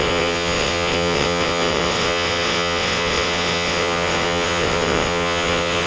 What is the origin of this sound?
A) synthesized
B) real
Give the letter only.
A